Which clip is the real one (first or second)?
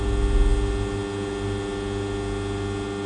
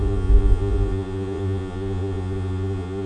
first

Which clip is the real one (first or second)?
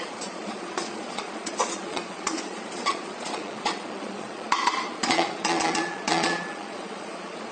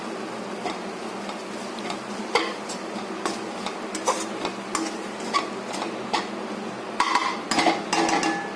second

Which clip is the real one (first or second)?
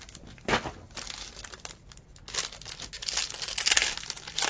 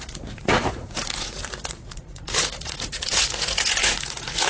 first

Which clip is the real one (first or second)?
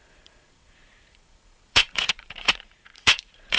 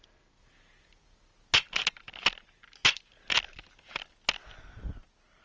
second